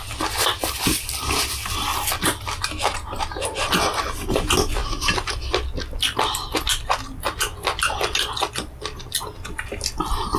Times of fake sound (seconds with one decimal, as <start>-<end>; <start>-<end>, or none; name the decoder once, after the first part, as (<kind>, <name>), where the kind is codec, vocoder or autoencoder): none